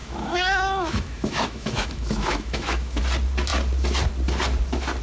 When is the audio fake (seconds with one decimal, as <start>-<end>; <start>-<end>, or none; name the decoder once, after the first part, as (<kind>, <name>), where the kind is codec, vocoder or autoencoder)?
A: 0.0-3.0 (autoencoder, DAC-VAE)